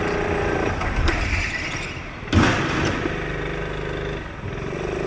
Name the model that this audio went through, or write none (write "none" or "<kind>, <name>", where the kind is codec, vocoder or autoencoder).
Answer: none